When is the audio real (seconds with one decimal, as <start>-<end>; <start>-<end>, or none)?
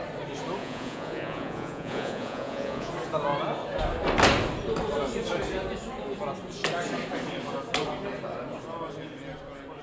0.0-0.6; 2.9-9.8